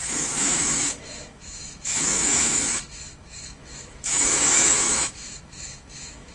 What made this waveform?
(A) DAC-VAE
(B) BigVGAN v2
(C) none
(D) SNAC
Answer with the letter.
A